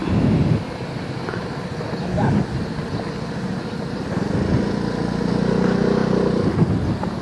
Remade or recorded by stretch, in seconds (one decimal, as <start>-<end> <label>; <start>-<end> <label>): 0.0-7.2 recorded